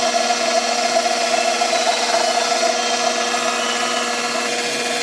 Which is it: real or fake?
real